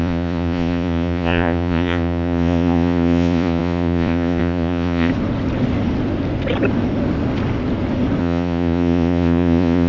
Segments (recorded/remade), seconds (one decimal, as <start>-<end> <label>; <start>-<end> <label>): 0.0-5.1 remade; 5.1-8.2 recorded; 8.2-9.9 remade